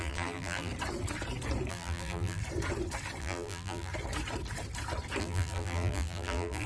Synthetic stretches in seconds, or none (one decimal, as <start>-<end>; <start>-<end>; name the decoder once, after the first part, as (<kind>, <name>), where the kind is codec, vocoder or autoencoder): 0.0-0.7 (vocoder, BigVGAN v2); 1.7-2.4; 3.2-3.9; 5.2-6.7